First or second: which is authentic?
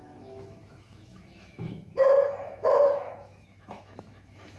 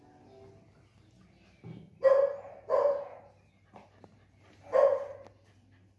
second